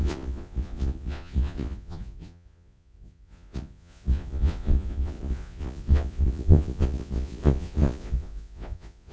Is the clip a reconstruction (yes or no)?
yes